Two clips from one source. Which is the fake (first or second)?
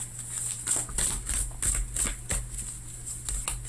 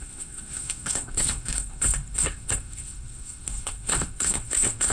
second